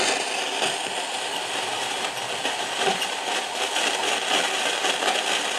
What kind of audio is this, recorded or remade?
recorded